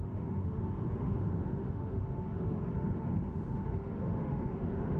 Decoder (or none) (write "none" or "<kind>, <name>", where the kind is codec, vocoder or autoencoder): autoencoder, DAC-VAE